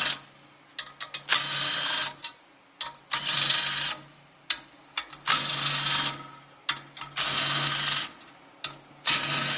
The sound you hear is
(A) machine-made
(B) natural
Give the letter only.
B